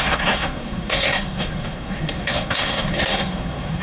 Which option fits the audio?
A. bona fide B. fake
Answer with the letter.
B